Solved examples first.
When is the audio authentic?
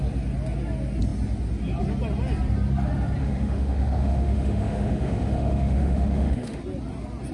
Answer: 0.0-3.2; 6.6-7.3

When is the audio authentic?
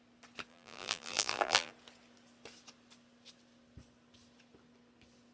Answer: 0.0-0.5; 1.7-5.3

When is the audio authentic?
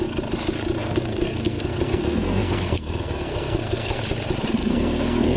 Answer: 0.0-0.8; 4.0-4.6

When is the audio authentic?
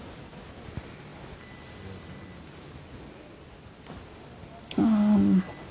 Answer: 0.0-5.7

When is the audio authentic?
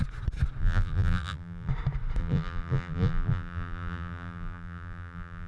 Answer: 0.0-0.6; 1.7-2.2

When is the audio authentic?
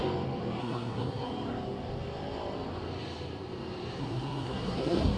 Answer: 0.0-0.6; 1.3-4.0